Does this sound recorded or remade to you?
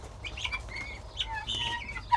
recorded